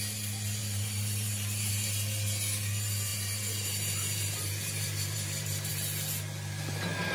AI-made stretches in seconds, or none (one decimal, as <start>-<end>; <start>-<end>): 0.6-1.7; 3.1-5.7